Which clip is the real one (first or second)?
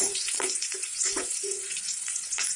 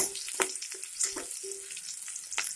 second